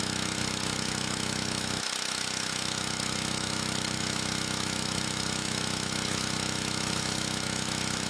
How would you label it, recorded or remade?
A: remade